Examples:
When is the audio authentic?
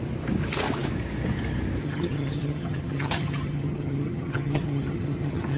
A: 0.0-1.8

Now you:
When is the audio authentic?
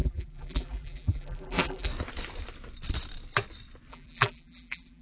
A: 1.9-3.9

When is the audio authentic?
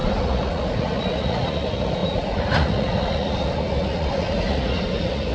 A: none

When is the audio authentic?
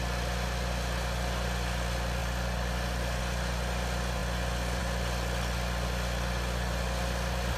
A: 0.0-2.2; 3.2-7.6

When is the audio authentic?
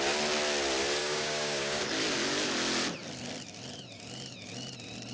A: 0.0-1.0; 1.8-5.1